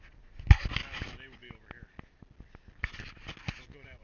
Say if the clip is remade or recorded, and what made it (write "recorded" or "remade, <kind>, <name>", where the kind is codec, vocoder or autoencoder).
recorded